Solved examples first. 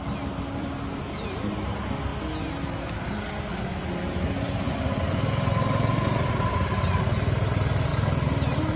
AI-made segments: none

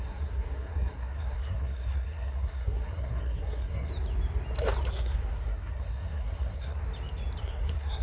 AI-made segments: 0.0-3.9 (codec, SNAC); 4.9-6.8; 7.4-8.0

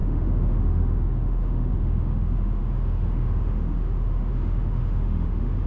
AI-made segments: 0.0-5.7 (autoencoder, DAC-VAE)

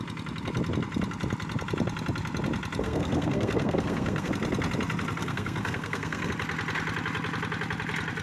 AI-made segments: 2.8-4.3 (codec, SNAC); 5.2-6.3